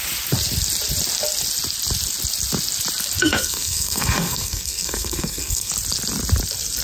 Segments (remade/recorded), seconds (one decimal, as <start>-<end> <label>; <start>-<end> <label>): 0.0-3.2 recorded; 3.2-5.7 remade; 5.7-6.8 recorded